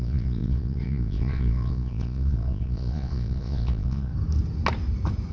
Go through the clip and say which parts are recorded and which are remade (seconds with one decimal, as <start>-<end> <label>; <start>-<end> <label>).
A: 0.0-4.1 remade; 4.1-5.3 recorded